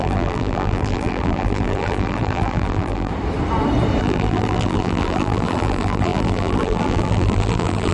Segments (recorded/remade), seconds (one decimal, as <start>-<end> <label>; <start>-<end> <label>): 0.0-3.1 remade; 3.1-4.0 recorded; 4.0-7.9 remade